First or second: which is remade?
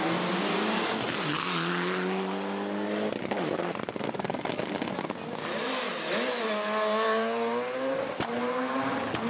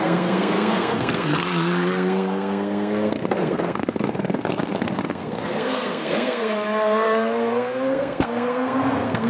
second